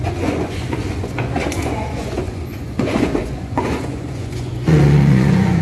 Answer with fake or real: fake